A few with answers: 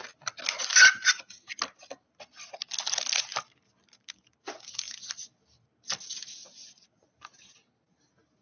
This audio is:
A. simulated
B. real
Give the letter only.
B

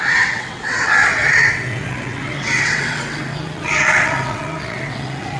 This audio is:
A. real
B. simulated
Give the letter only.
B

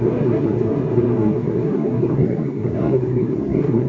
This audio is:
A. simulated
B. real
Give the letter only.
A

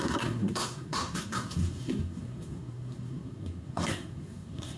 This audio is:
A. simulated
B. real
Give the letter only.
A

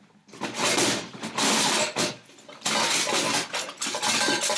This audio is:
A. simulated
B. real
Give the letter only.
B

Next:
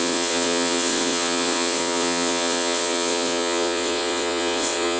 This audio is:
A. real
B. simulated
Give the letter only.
B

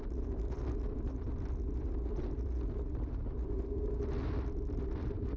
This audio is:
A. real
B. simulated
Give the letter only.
A